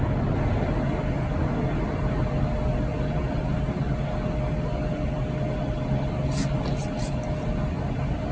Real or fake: real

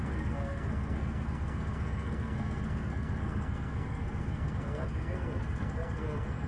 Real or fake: fake